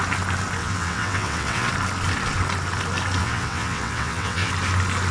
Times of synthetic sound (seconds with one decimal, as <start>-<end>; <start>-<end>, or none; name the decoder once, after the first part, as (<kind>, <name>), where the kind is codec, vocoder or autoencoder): 0.6-1.7 (vocoder, WaveNeXt); 3.2-4.5